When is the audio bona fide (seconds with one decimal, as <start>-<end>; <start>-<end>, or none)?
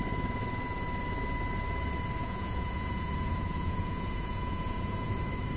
0.0-2.2; 5.1-5.6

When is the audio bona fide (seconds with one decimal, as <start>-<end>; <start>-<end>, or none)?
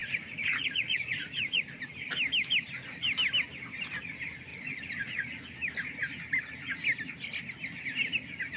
1.8-4.5; 5.5-8.6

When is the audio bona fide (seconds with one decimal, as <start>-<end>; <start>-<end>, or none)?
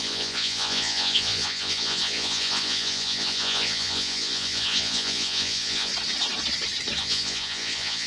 5.9-7.0